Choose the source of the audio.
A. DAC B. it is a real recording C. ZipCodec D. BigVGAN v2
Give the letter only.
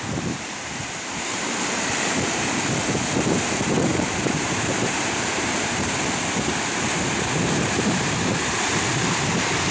D